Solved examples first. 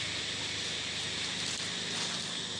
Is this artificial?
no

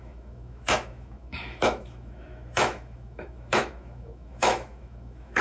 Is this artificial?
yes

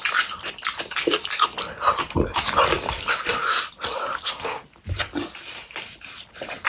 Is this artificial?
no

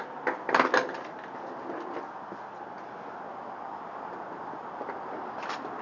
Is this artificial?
no